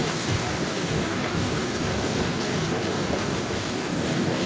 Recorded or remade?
remade